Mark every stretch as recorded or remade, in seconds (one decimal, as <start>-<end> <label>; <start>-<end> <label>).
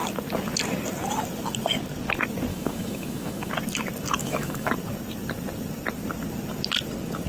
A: 0.0-2.5 recorded; 2.5-3.5 remade; 3.5-4.2 recorded; 4.2-4.7 remade; 4.7-7.3 recorded